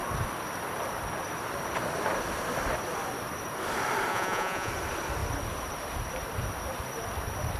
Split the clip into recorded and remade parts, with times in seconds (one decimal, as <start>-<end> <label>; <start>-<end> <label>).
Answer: 0.0-4.1 recorded; 4.1-4.7 remade; 4.7-7.6 recorded